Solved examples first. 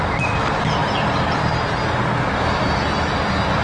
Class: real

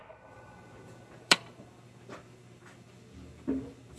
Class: fake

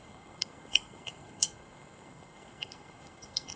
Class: fake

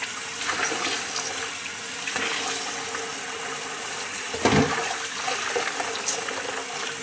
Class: real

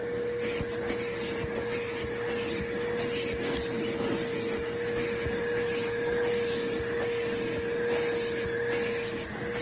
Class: real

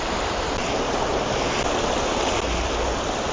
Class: real